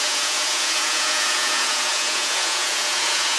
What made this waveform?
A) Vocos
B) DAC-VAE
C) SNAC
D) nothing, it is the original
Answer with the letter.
A